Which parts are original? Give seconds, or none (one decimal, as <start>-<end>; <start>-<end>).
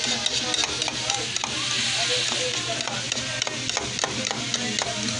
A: 0.0-5.2